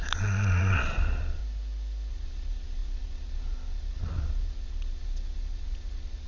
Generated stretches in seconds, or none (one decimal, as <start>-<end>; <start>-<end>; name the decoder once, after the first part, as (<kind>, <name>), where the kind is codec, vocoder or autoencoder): 0.0-1.4 (vocoder, Vocos); 2.1-6.3